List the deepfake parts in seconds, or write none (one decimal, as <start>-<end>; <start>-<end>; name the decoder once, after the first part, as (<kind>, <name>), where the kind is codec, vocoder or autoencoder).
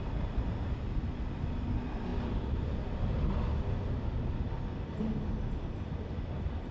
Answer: none